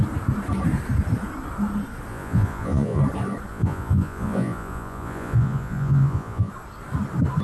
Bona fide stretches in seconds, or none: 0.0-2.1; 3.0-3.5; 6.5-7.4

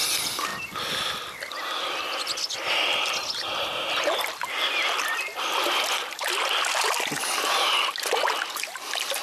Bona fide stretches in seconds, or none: 0.0-9.2

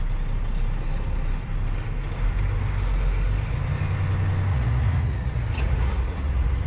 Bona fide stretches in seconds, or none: 0.0-4.5

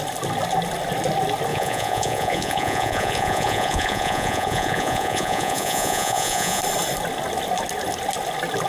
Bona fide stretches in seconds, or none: 0.0-1.5; 6.6-8.7

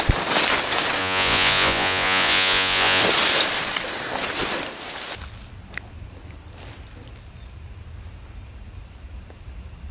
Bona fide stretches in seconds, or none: 0.0-1.0; 3.0-9.9

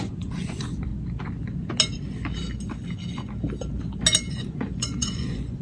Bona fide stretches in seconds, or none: 0.9-4.3

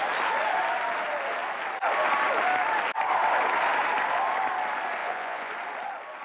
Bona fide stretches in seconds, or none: 0.0-5.0; 5.5-6.2

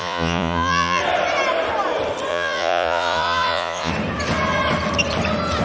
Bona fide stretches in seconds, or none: 1.0-2.3; 3.9-5.6